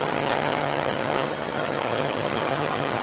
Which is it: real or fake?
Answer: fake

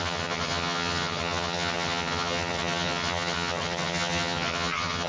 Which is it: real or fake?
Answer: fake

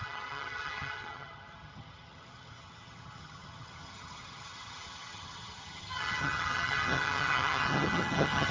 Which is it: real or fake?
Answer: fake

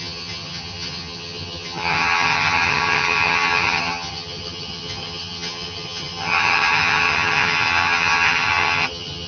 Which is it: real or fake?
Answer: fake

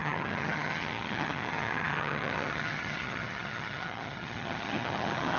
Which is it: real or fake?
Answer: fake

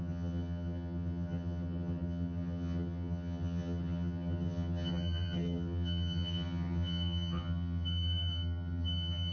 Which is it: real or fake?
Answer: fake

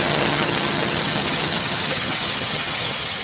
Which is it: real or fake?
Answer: fake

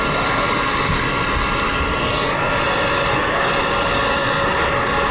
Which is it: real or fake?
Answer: real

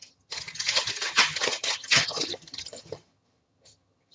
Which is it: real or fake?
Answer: fake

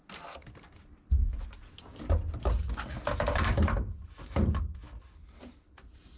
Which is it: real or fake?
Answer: real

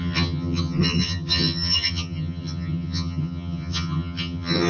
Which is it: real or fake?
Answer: fake